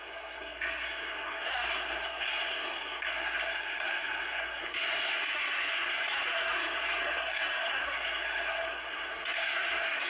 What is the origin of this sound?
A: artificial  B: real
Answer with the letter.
A